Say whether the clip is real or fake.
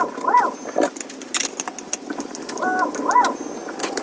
real